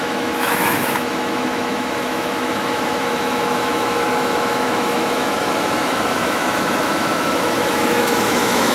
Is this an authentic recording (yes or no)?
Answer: no